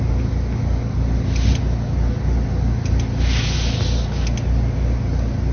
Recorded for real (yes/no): yes